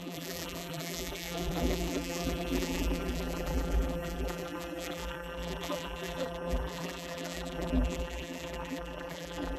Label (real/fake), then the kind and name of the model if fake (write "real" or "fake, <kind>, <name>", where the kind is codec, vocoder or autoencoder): fake, vocoder, BigVGAN v2